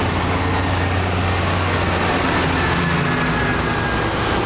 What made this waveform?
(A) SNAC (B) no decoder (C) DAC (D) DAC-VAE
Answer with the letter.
B